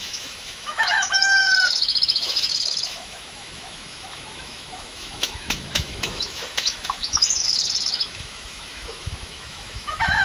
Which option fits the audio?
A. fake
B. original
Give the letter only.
A